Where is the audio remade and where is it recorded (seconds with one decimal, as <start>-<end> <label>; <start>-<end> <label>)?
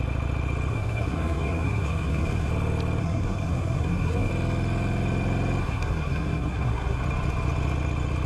0.0-0.7 recorded; 0.7-2.5 remade; 2.5-3.0 recorded; 3.0-4.3 remade; 4.3-5.6 recorded; 5.6-7.0 remade; 7.0-8.3 recorded